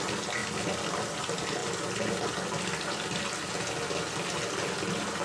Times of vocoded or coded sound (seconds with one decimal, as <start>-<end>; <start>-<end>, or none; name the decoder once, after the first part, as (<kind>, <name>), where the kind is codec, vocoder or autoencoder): none